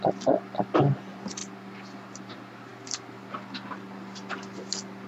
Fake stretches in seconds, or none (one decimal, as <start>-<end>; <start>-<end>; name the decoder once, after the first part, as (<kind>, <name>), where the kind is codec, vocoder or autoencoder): none